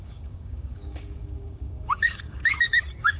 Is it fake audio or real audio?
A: fake